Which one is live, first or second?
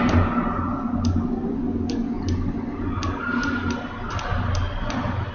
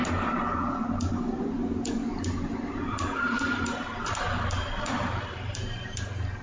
first